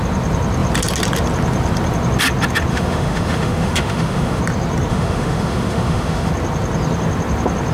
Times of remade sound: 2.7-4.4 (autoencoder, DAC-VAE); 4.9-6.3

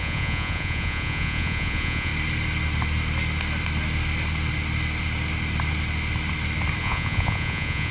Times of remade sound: 0.0-2.1 (vocoder, Vocos); 6.8-7.9

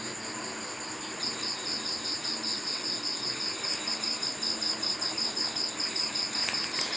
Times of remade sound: 2.5-3.3 (vocoder, WaveNeXt)

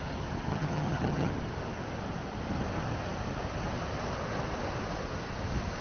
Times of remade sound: 0.5-1.3 (vocoder, HiFi-GAN)

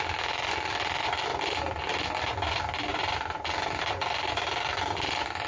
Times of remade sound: 1.3-1.8 (vocoder, BigVGAN v2); 2.9-5.5

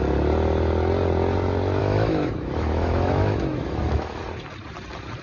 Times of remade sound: 1.8-4.2 (autoencoder, DAC-VAE)

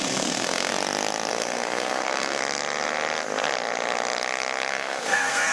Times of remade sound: 0.0-0.7 (codec, SNAC); 1.3-2.4; 4.7-5.5

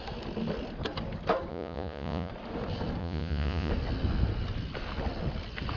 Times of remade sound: 1.5-2.3 (vocoder, Vocos); 3.0-3.7